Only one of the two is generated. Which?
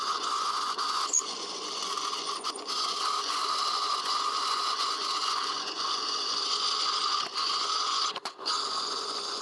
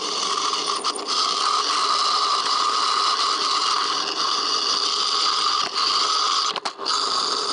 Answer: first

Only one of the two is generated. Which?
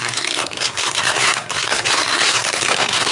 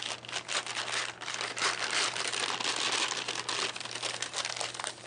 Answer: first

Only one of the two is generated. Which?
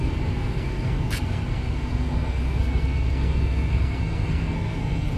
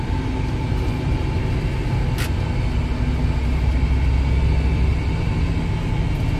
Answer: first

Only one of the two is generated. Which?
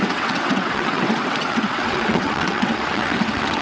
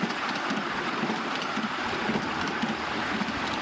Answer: first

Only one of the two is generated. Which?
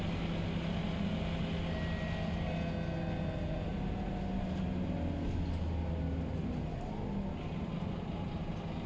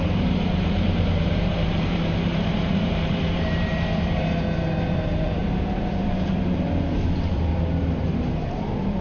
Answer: second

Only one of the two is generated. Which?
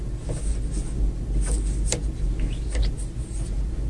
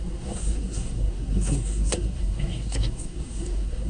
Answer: second